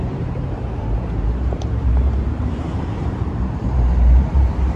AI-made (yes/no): yes